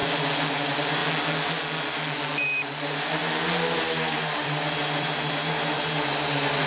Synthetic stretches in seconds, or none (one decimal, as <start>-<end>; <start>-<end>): 0.5-1.0; 2.6-3.2; 3.8-6.7